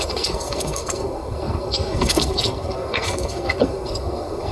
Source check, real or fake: fake